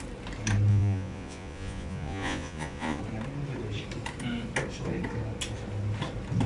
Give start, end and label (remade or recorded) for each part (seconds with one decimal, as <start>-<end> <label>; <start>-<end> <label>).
0.0-0.7 recorded; 0.7-3.0 remade; 3.0-6.5 recorded